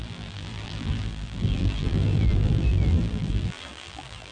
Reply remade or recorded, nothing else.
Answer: remade